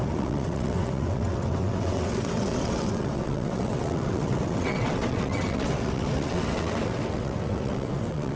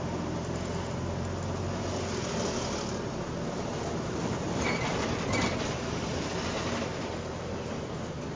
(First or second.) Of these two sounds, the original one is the second